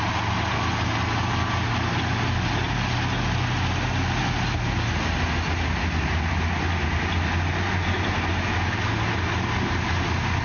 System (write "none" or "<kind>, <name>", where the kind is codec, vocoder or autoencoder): none